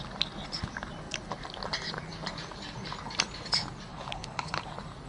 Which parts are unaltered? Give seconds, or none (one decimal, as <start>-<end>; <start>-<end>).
0.0-3.9; 4.6-5.1